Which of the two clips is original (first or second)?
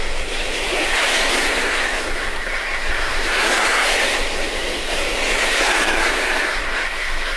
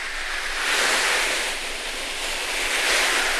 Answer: second